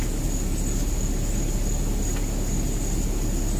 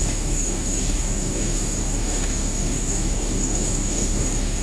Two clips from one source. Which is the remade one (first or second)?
second